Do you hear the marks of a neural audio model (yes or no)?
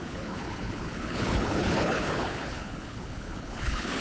yes